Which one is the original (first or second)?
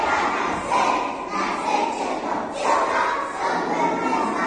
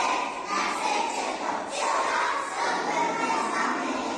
first